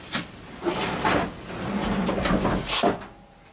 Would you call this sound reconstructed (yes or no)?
no